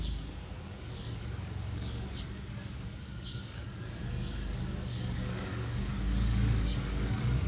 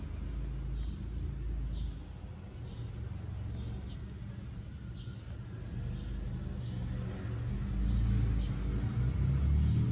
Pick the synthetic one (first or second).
first